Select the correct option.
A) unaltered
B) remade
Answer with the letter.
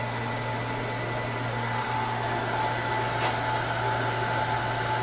A